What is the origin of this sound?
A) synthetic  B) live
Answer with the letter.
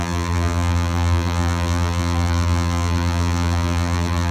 A